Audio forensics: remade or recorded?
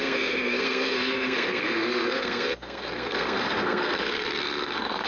remade